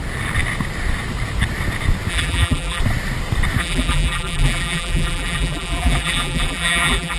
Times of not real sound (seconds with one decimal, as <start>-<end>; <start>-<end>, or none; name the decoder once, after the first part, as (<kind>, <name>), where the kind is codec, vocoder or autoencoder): 2.1-2.8 (vocoder, BigVGAN v2); 3.6-7.2